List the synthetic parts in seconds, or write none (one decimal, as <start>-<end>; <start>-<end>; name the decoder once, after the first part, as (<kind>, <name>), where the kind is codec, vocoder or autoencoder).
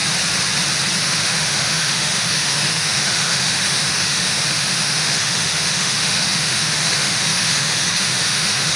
1.0-8.8 (autoencoder, DAC-VAE)